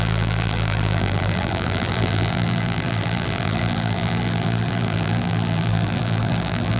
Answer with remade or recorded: remade